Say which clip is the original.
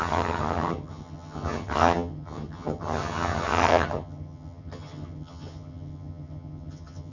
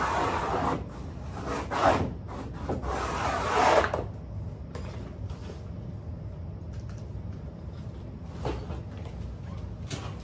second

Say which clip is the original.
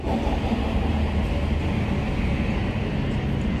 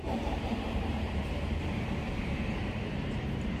first